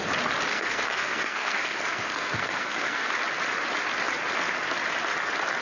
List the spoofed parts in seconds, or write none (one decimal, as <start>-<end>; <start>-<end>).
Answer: 0.5-3.1